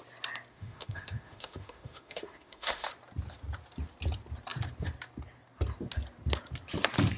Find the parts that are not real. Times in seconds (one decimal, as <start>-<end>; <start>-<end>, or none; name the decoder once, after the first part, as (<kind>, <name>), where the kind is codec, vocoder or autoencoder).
0.5-2.9 (autoencoder, DAC-VAE)